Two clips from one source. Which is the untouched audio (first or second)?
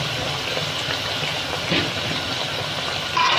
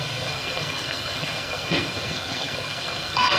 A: first